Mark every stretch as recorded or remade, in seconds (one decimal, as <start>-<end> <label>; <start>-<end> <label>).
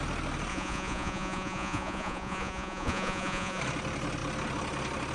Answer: 0.0-0.5 recorded; 0.5-3.6 remade; 3.6-5.1 recorded